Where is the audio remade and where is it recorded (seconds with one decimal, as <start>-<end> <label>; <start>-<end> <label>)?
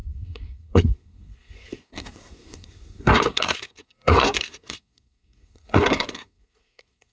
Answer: 0.0-7.1 remade